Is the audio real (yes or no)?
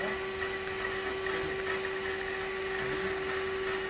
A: yes